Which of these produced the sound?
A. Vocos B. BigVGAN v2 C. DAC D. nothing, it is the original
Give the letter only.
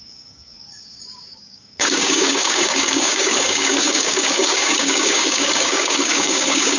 C